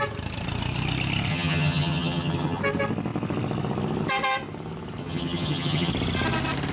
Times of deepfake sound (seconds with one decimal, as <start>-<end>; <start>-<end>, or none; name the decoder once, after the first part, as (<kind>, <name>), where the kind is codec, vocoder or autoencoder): 1.3-2.6 (vocoder, HiFi-GAN); 5.0-5.9